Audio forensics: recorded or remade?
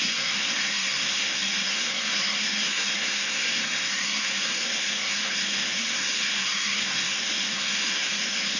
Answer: remade